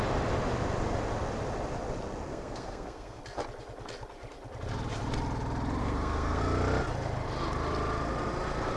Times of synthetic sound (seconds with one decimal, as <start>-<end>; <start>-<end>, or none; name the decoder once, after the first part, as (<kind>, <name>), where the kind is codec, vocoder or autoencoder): 2.3-3.2 (codec, SNAC); 5.8-6.4